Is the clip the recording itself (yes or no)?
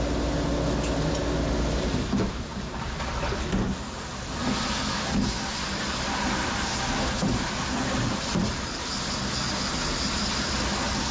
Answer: yes